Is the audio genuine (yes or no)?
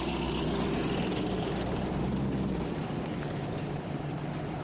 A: yes